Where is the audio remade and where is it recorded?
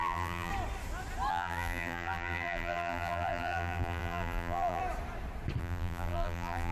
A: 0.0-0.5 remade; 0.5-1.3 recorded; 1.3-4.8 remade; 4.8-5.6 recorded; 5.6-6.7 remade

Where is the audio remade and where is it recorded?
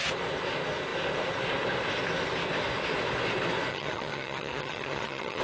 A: 0.0-3.7 recorded; 3.7-5.4 remade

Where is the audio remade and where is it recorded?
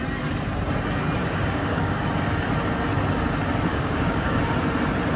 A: 0.0-1.2 recorded; 1.2-2.1 remade; 2.1-3.7 recorded; 3.7-4.4 remade; 4.4-5.2 recorded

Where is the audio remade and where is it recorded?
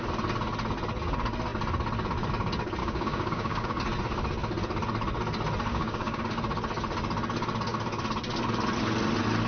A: 0.0-2.8 recorded; 2.8-3.8 remade; 3.8-5.7 recorded; 5.7-6.2 remade; 6.2-9.5 recorded